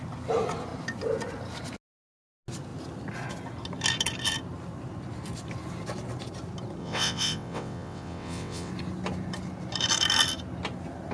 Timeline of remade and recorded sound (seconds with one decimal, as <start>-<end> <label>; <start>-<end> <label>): 0.0-6.8 recorded; 6.8-8.7 remade; 8.7-11.1 recorded